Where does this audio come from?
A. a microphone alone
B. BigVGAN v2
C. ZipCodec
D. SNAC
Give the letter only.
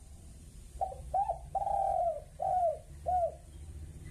B